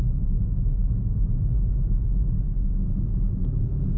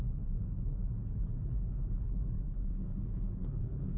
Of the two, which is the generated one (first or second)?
second